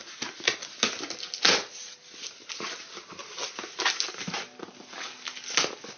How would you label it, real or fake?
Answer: real